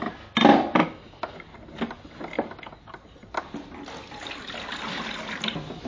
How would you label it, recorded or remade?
recorded